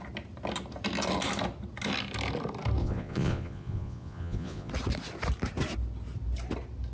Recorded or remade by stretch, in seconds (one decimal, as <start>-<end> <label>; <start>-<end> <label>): 0.0-2.8 recorded; 2.8-4.7 remade; 4.7-6.9 recorded